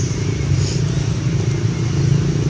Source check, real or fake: real